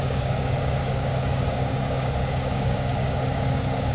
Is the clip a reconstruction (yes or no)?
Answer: yes